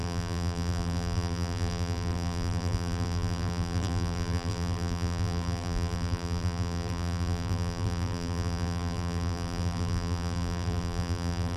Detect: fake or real fake